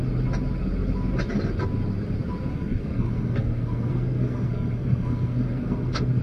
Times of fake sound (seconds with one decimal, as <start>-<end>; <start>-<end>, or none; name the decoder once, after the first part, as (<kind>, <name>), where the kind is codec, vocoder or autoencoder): 2.5-6.2 (codec, SNAC)

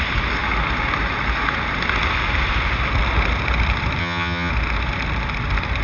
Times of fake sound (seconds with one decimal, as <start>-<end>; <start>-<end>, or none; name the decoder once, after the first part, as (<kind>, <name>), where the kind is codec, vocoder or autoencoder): 4.0-4.5 (vocoder, HiFi-GAN)

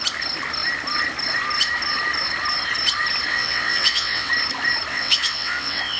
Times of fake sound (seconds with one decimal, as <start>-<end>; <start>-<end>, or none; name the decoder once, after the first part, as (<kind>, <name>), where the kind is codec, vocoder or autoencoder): 3.3-4.3 (vocoder, WaveNeXt); 4.9-6.0

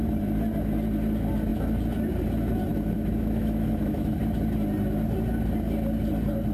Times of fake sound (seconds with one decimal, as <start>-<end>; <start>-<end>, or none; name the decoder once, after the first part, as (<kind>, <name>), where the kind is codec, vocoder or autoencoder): 2.7-4.2 (autoencoder, DAC-VAE)